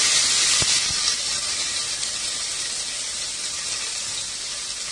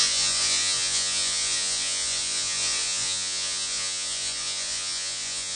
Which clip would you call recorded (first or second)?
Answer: first